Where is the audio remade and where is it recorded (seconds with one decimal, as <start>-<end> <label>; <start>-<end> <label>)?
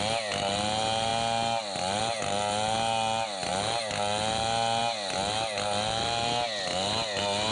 0.0-7.5 recorded